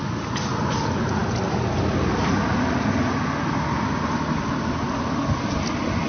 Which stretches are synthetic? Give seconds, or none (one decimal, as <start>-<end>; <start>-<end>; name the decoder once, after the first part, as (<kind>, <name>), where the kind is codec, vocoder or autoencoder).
none